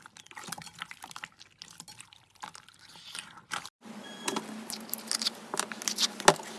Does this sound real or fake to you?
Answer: real